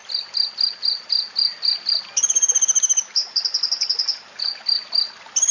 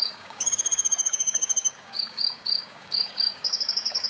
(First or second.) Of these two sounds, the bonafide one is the first